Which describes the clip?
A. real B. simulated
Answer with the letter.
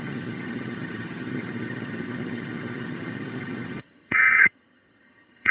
B